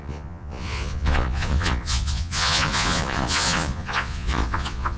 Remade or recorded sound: remade